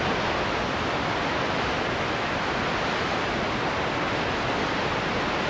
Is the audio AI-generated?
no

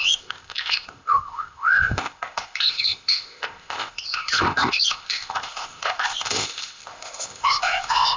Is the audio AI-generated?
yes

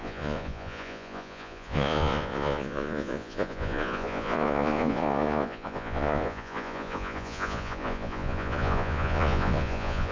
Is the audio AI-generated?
yes